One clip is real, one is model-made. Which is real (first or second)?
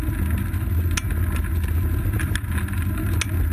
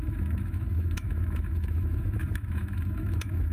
first